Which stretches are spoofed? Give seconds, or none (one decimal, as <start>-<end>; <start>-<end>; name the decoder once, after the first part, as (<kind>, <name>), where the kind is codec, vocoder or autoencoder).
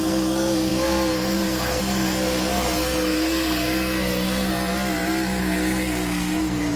0.0-4.5 (codec, SNAC); 5.4-6.8